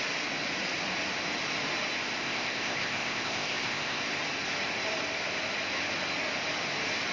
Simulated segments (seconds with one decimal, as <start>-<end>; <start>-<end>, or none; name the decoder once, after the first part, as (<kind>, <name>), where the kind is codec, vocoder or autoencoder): 2.2-4.0 (codec, ZipCodec)

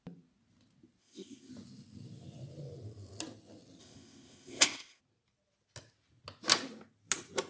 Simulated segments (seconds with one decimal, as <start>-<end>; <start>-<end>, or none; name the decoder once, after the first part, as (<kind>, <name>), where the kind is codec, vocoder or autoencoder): 1.0-1.5 (codec, ZipCodec); 3.8-5.0

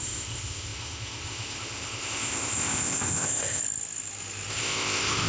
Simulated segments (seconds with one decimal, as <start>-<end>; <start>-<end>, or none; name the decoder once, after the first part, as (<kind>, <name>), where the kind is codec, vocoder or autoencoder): 0.0-3.6 (codec, ZipCodec); 4.5-5.3

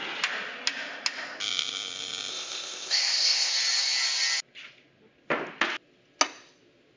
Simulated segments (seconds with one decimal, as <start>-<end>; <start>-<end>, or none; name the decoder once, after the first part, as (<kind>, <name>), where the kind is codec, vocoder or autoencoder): 2.3-3.5 (codec, ZipCodec)

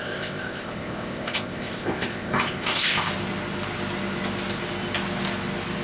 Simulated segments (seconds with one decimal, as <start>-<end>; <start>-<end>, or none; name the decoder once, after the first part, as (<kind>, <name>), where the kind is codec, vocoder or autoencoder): 0.0-3.1 (codec, ZipCodec)

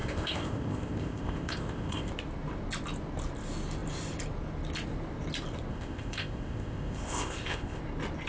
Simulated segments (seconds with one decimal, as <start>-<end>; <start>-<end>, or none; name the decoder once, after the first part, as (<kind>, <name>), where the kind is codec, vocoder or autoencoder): 0.0-2.1 (codec, ZipCodec); 5.7-7.8